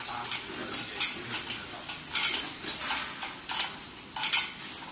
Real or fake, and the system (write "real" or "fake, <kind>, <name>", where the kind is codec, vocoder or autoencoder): real